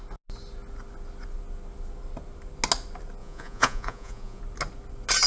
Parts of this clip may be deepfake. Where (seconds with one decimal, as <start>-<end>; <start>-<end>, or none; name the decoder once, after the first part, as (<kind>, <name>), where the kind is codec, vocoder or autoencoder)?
3.2-4.4 (vocoder, Vocos)